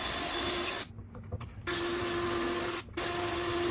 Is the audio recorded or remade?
recorded